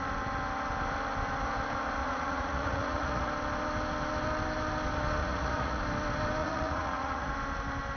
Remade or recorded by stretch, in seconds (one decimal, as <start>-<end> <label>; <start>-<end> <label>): 0.0-2.0 recorded; 2.0-3.3 remade; 3.3-5.2 recorded; 5.2-5.8 remade; 5.8-6.4 recorded; 6.4-7.3 remade; 7.3-8.0 recorded